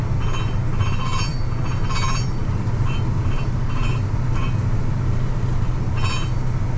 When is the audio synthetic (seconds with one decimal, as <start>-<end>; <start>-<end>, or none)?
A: none